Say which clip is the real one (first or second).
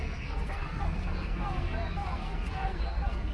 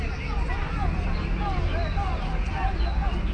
second